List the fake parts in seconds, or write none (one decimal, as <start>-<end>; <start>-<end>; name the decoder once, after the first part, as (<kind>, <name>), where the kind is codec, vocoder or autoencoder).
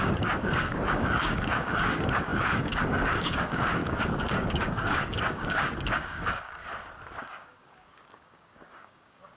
0.0-3.8 (codec, DAC); 4.3-6.7; 7.2-9.4